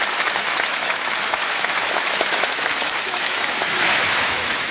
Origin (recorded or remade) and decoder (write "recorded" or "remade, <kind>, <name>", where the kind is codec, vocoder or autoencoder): remade, autoencoder, DAC-VAE